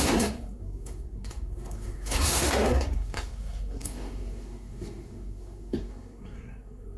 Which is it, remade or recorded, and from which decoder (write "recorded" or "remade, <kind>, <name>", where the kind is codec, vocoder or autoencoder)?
remade, codec, SNAC